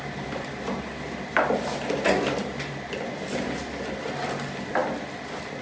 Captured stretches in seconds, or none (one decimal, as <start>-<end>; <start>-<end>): 0.0-5.6